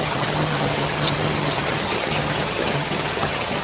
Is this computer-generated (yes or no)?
yes